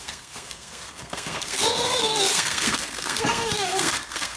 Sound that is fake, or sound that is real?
fake